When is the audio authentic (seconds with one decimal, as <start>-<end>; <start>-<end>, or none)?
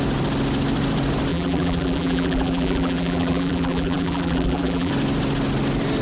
0.0-1.3; 4.9-6.0